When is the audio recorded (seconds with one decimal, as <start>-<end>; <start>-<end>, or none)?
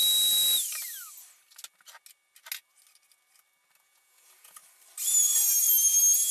0.0-3.8; 4.6-6.3